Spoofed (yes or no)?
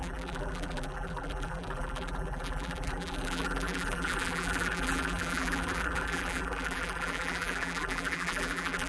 yes